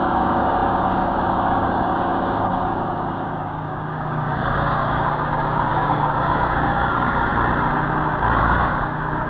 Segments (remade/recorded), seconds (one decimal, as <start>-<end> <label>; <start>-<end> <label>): 0.0-7.3 remade; 7.3-8.4 recorded; 8.4-9.3 remade

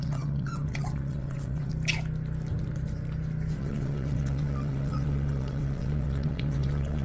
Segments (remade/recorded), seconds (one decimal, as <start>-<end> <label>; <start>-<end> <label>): 0.0-1.7 remade; 1.7-3.6 recorded; 3.6-7.0 remade

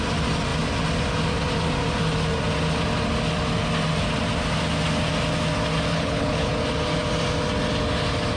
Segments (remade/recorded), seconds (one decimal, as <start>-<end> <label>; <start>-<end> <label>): 0.0-5.9 recorded; 5.9-6.5 remade; 6.5-8.4 recorded

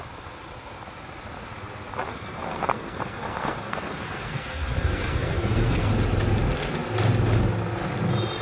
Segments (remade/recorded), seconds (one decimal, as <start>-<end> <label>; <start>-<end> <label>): 0.0-2.1 recorded; 2.1-5.9 remade; 5.9-8.4 recorded